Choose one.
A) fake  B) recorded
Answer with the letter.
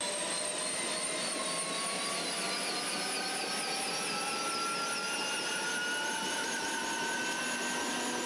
B